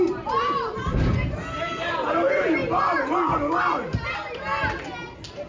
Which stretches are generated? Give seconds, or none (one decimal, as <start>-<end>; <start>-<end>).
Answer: 0.0-2.6; 3.6-4.5